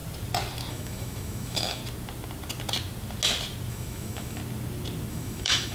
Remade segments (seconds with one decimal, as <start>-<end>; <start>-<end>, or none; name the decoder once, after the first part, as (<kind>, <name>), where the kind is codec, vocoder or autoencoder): 0.7-1.8 (autoencoder, DAC-VAE); 3.7-4.4; 5.1-5.7